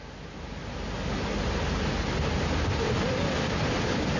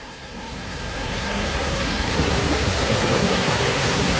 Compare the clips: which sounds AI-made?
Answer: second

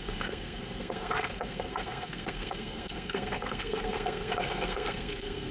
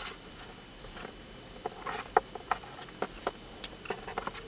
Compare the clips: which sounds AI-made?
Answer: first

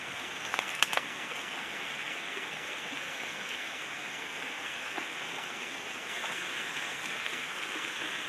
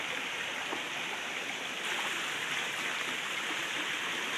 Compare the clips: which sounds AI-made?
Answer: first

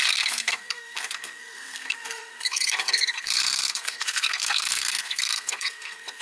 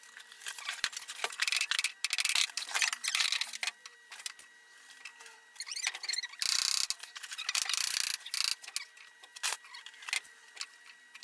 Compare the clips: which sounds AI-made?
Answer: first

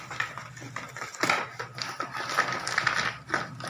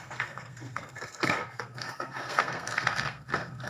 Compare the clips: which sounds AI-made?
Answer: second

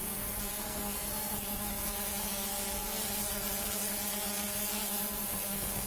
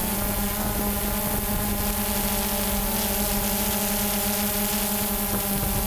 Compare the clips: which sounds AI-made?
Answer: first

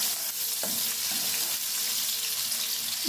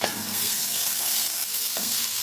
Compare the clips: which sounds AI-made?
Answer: second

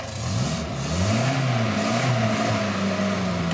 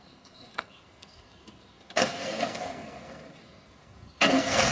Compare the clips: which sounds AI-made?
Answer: second